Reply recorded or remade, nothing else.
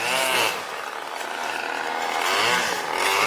recorded